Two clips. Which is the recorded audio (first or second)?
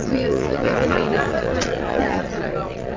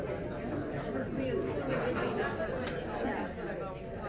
second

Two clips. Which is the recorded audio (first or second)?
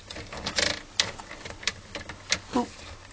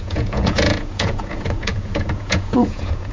first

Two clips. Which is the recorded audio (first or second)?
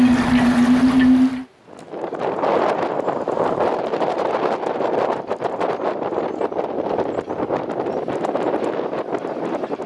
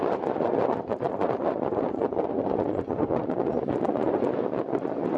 first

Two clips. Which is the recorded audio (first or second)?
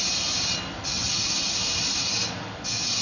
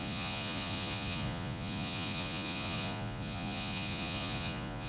first